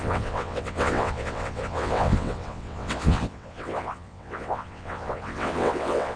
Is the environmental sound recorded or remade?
remade